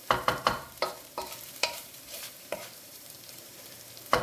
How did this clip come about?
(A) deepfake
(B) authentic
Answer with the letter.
A